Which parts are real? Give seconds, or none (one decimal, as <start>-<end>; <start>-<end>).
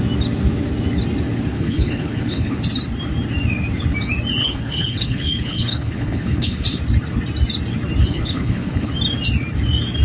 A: 0.0-1.5; 2.6-4.4; 6.8-8.0; 8.9-10.0